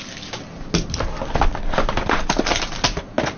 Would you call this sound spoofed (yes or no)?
no